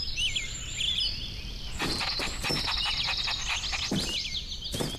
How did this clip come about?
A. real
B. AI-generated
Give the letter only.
A